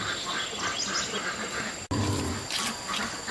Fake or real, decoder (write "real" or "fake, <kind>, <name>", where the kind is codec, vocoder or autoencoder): real